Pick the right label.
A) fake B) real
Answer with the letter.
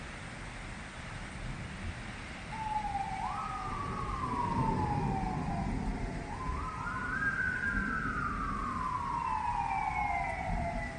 B